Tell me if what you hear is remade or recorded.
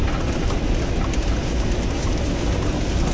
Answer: recorded